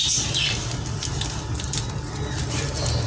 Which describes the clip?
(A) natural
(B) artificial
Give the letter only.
A